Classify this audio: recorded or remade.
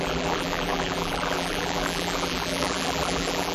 remade